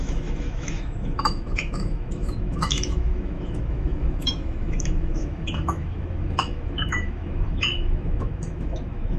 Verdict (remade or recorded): remade